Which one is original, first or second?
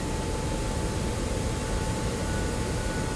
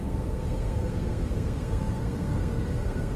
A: first